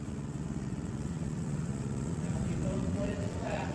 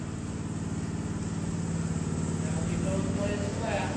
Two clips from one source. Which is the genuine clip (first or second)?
second